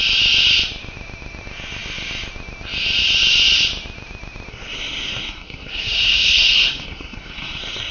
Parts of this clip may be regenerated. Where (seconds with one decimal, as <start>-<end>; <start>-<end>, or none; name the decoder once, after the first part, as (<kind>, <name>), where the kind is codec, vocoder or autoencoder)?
4.5-7.9 (codec, SNAC)